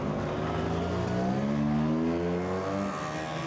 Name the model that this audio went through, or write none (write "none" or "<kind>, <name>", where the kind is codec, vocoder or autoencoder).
none